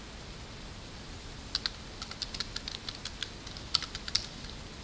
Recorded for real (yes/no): yes